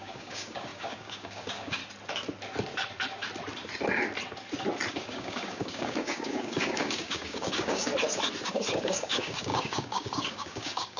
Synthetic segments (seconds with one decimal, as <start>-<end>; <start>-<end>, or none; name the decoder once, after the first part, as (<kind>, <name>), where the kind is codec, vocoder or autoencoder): 0.0-1.8 (codec, DAC); 4.9-7.9; 8.5-11.0

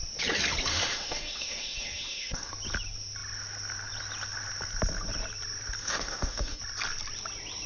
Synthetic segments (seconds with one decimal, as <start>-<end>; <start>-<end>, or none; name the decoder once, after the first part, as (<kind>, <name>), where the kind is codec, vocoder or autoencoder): 0.7-2.5 (autoencoder, DAC-VAE); 5.8-6.6

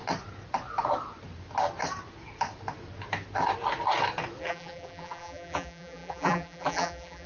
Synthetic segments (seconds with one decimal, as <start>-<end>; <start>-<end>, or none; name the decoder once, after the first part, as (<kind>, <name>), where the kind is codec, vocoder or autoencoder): 4.4-7.3 (vocoder, BigVGAN v2)

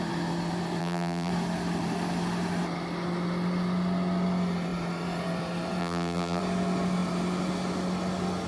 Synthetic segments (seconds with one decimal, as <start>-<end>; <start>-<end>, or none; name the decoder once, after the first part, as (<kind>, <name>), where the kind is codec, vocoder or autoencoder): 0.8-1.3 (vocoder, BigVGAN v2); 5.8-6.4

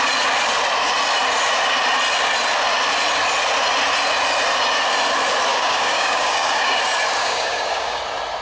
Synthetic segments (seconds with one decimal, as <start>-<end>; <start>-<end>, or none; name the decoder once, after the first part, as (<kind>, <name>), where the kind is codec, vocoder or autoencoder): 5.5-6.8 (codec, DAC); 7.2-8.0

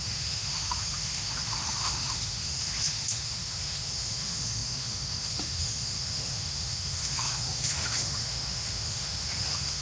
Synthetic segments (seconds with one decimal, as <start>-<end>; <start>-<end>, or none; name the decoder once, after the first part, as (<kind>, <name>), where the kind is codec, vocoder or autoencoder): 0.0-9.8 (autoencoder, DAC-VAE)

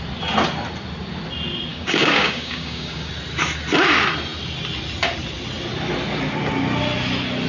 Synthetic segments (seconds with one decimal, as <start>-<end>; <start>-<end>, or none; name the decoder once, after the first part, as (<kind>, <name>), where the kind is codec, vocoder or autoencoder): 1.7-3.1 (codec, DAC)

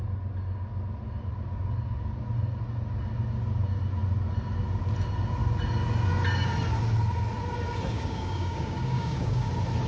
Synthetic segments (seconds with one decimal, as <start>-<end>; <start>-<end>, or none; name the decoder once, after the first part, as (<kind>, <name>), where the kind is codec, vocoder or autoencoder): 7.9-9.5 (codec, DAC)